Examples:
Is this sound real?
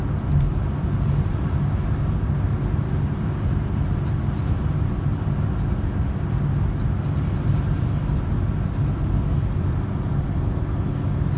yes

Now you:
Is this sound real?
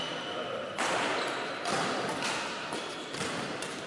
yes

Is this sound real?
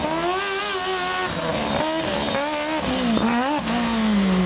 yes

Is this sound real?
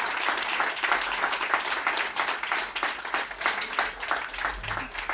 yes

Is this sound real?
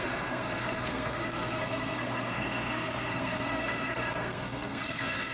no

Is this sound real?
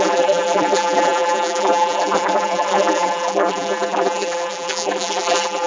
no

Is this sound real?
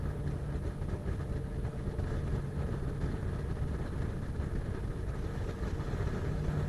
yes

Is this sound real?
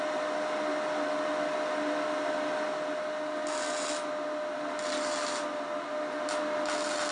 yes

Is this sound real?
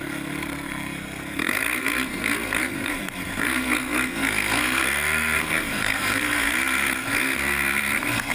no